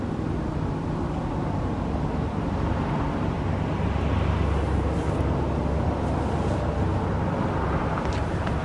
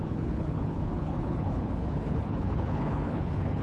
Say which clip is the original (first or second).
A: first